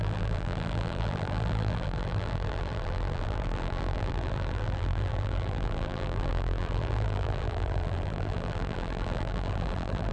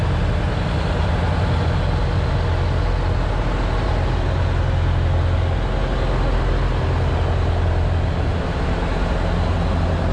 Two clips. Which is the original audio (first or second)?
second